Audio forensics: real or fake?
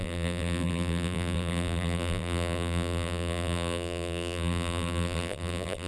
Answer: fake